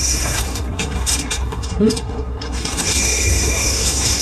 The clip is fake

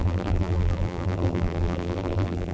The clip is fake